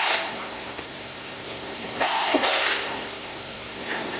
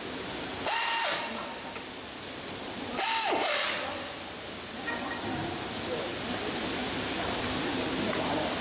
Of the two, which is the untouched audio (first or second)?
second